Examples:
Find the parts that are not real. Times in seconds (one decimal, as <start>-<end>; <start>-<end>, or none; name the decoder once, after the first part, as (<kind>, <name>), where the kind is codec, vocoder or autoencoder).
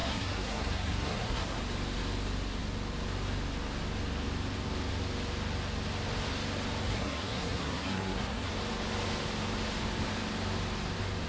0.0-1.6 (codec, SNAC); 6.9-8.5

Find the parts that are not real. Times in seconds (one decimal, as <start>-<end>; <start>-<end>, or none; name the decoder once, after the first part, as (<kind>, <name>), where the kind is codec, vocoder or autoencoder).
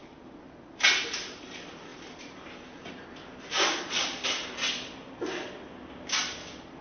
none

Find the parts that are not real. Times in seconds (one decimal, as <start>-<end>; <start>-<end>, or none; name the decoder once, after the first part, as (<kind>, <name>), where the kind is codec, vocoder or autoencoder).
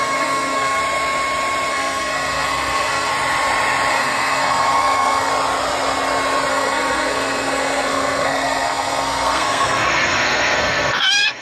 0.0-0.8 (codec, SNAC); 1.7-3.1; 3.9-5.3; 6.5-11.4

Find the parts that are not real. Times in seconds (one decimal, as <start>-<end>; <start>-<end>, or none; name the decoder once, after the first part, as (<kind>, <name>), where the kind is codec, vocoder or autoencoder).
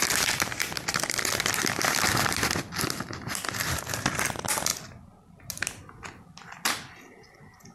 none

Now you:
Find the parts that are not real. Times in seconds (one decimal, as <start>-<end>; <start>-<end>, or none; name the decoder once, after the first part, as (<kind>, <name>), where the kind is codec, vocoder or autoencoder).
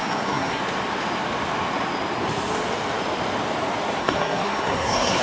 0.0-0.6 (codec, SNAC); 4.0-5.2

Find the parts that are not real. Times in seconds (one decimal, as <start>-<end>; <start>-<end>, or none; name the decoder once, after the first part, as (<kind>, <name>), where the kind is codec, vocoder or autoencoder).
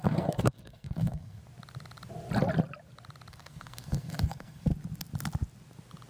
0.0-1.4 (codec, SNAC); 3.3-4.7